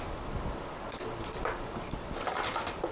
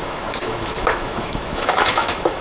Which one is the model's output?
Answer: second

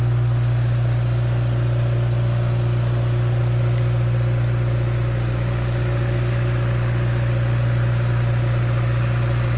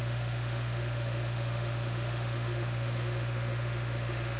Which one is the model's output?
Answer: second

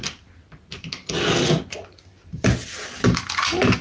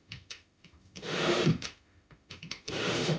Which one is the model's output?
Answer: second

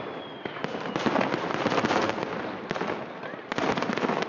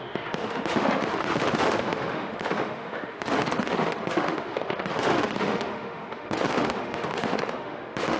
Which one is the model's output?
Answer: second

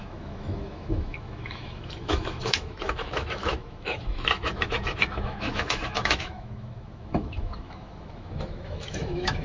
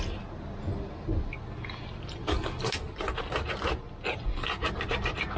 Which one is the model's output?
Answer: first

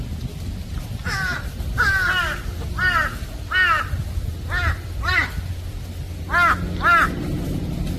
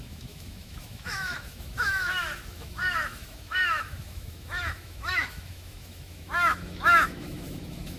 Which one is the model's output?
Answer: second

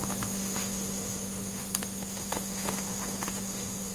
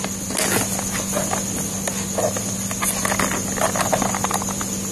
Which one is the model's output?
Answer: first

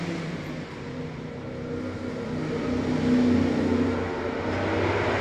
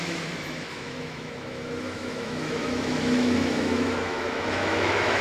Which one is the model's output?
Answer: second